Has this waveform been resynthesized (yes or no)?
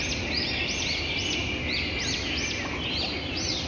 no